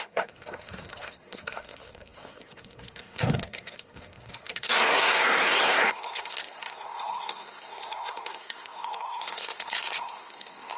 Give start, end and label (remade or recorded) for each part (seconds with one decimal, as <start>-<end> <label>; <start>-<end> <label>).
0.0-10.8 remade